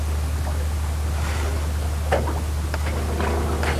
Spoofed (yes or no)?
no